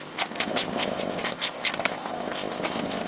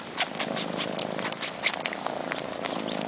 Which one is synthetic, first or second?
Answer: first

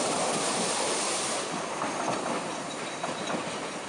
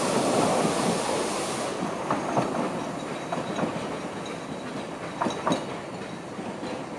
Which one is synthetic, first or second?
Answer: first